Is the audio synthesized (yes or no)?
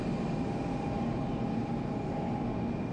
no